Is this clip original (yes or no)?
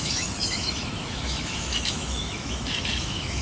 no